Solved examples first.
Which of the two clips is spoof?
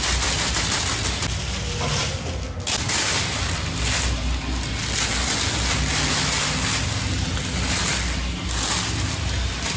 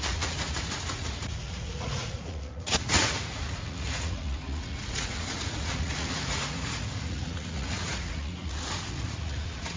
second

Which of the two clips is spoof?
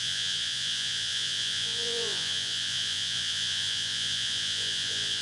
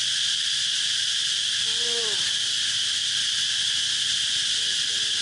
first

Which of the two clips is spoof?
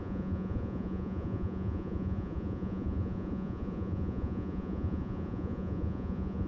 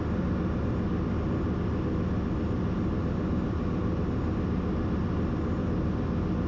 first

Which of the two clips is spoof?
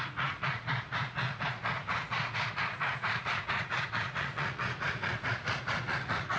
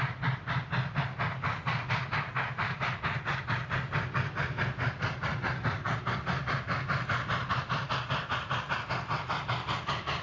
first